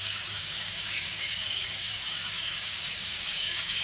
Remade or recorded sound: remade